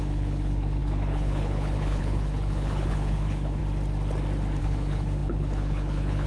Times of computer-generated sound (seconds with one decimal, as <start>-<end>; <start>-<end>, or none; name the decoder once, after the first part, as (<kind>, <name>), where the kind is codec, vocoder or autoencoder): 0.0-3.6 (codec, HILCodec); 4.6-6.3